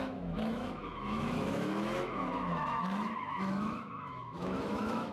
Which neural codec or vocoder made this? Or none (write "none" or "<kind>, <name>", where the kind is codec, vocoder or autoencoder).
autoencoder, DAC-VAE